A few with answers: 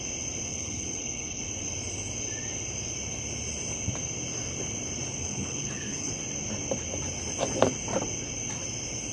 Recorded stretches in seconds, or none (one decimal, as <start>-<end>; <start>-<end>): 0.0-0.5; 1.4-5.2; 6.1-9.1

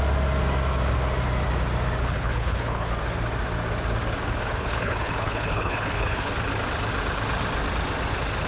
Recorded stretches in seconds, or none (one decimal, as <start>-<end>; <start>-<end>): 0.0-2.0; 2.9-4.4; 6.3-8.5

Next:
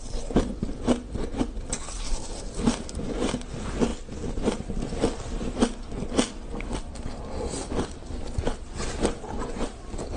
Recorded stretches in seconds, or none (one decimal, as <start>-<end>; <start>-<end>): 0.0-10.2

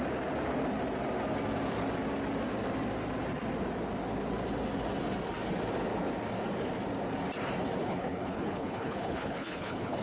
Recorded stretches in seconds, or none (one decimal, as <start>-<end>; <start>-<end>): 0.0-7.8

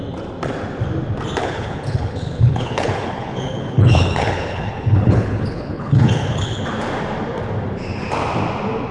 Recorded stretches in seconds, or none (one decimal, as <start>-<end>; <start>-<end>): 0.0-1.4; 6.6-8.9

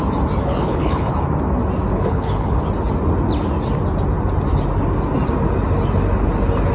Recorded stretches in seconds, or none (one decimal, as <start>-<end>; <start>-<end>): 0.0-0.4; 1.1-1.9; 2.6-6.7

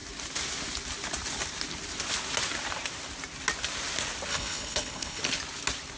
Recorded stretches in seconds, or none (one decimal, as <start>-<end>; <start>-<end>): 0.0-4.3; 5.2-6.0

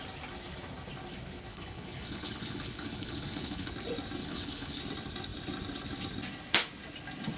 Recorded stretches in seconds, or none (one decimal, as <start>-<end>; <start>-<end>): 0.0-1.5; 3.7-4.2; 4.8-7.4